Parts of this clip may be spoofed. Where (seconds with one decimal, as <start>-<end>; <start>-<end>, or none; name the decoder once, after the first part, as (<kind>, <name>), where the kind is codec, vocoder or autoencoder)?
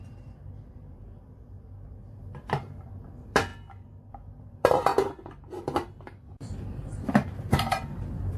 0.0-3.5 (vocoder, BigVGAN v2); 4.1-4.9; 5.6-8.4